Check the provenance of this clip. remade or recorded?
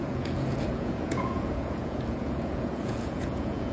remade